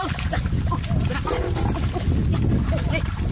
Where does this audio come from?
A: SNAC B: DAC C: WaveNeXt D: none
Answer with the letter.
D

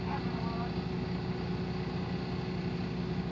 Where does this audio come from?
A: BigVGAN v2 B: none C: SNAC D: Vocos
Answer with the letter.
B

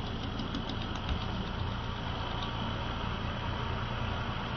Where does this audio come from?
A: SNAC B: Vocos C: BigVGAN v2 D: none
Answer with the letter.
D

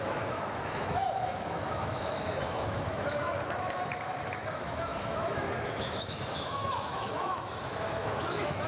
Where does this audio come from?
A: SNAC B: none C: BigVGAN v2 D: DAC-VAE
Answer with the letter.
D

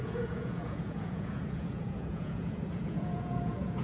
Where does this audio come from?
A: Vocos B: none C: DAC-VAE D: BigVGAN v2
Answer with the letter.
A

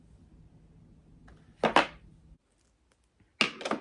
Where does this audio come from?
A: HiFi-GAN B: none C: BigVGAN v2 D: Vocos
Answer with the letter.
B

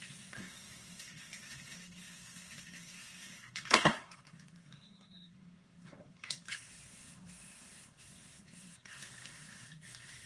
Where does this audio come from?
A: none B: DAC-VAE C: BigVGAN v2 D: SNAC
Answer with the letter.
D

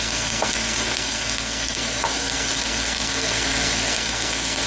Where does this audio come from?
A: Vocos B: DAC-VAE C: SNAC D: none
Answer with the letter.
C